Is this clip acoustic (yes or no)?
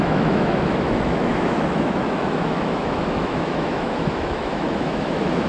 no